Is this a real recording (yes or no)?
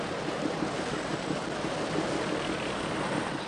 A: yes